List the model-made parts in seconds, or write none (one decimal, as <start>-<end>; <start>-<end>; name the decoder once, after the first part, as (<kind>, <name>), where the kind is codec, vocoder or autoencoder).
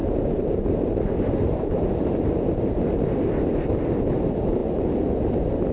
0.0-2.4 (vocoder, BigVGAN v2)